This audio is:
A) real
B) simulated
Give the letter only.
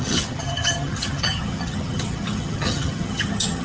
B